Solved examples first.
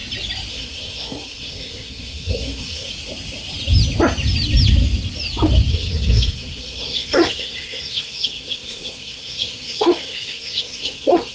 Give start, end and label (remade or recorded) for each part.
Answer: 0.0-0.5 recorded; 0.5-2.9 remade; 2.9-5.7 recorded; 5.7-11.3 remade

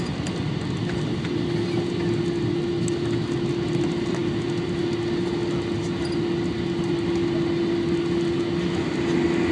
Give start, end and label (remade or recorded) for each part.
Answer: 0.0-9.5 recorded

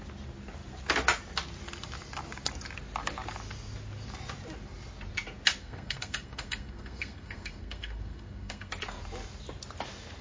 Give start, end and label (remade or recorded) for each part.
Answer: 0.0-5.6 recorded; 5.6-8.7 remade; 8.7-10.2 recorded

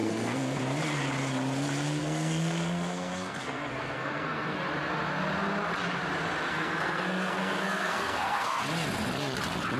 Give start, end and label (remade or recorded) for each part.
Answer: 0.0-0.6 remade; 0.6-2.0 recorded; 2.0-4.6 remade; 4.6-6.5 recorded; 6.5-8.6 remade; 8.6-9.8 recorded